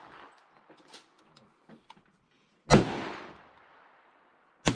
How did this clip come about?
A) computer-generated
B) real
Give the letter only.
B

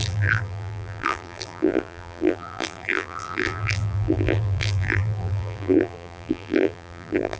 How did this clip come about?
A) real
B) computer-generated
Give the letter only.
B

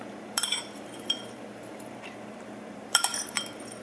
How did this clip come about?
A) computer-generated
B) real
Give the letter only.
A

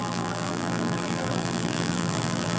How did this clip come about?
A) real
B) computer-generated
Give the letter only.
B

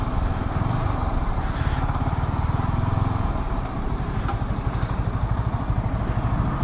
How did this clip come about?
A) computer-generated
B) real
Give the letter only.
B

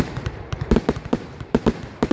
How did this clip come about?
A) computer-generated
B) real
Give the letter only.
A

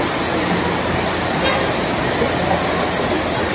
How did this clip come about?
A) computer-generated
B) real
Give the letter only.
B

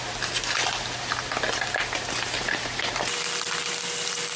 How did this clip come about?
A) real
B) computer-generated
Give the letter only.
A